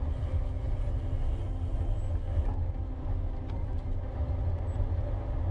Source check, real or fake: real